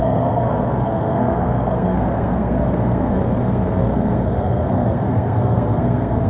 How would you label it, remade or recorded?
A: remade